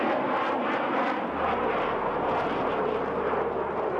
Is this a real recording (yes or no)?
yes